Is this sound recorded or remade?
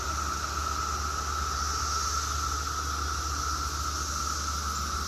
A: recorded